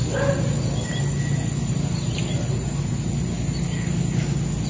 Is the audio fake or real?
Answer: real